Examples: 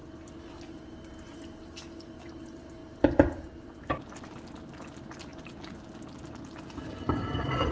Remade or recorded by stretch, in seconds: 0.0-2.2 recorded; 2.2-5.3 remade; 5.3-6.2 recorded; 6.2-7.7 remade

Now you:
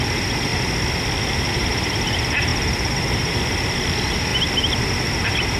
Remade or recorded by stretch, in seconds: 0.0-5.6 recorded

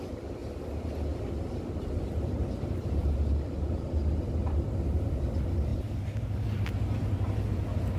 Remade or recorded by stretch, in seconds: 0.0-5.7 recorded; 5.7-6.7 remade; 6.7-8.0 recorded

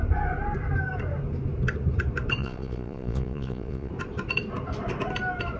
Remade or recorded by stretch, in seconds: 0.0-2.4 recorded; 2.4-3.9 remade; 3.9-5.6 recorded

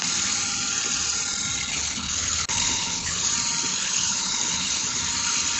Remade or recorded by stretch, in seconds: 0.0-1.7 recorded; 1.7-3.3 remade; 3.3-3.7 recorded; 3.7-5.0 remade; 5.0-5.6 recorded